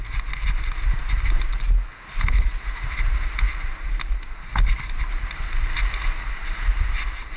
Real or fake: real